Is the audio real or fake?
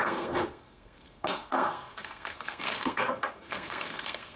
fake